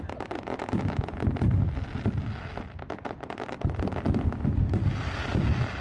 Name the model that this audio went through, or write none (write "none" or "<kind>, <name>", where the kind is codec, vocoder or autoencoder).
none